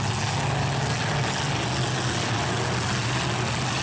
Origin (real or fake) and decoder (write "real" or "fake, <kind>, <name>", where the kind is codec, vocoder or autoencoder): real